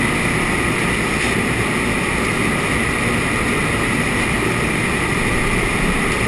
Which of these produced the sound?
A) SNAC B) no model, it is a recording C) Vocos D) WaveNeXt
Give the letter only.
B